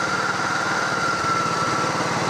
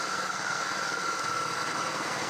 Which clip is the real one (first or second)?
first